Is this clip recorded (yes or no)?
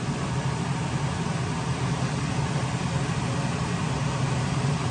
no